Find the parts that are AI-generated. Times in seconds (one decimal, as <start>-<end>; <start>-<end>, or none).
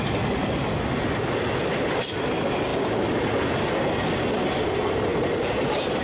none